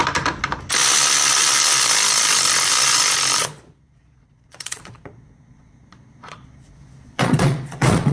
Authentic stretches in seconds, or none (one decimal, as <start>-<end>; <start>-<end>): 0.0-3.4